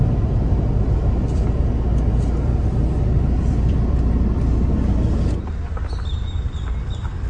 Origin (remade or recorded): recorded